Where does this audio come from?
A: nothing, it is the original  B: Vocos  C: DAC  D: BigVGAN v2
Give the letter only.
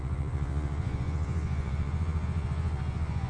B